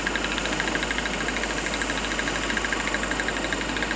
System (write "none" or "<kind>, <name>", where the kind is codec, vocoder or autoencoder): none